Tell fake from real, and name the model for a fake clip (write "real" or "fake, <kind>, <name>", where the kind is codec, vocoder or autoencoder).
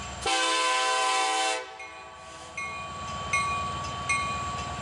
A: real